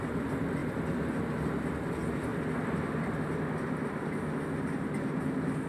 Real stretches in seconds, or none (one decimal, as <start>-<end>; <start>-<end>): 0.0-5.7